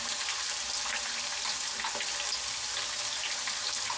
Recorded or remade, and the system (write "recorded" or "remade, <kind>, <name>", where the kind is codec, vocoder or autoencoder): recorded